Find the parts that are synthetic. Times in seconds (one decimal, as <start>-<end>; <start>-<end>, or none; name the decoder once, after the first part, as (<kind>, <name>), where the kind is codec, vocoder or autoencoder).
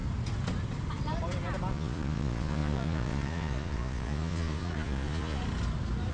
1.7-5.4 (vocoder, Vocos)